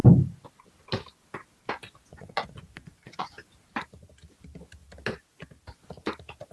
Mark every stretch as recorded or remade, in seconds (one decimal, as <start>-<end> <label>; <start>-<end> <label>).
0.0-2.1 recorded; 2.1-3.3 remade; 3.3-6.5 recorded